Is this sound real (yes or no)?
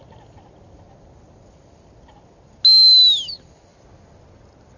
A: yes